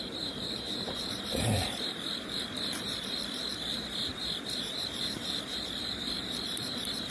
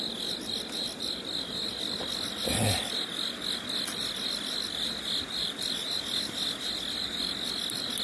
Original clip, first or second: second